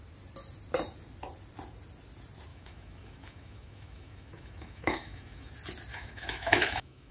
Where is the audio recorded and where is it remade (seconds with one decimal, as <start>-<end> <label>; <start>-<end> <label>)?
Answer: 0.0-2.5 recorded; 2.5-5.5 remade; 5.5-5.9 recorded; 5.9-7.1 remade